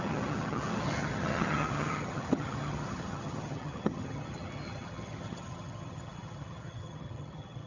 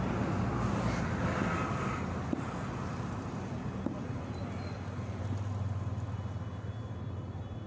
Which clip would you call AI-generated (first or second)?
first